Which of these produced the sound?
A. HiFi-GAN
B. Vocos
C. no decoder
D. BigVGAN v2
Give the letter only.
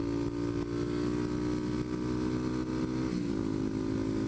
C